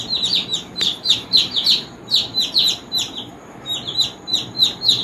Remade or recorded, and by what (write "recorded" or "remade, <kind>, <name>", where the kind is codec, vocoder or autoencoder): remade, vocoder, BigVGAN v2